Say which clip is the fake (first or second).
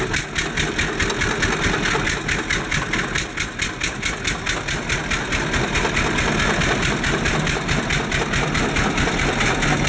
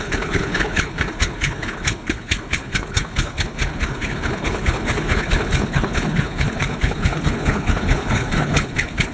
second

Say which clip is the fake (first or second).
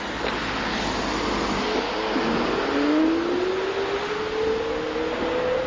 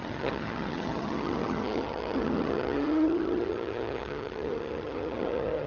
second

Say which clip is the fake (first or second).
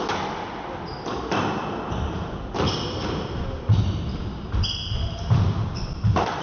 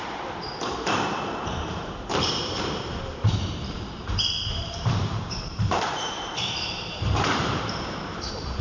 second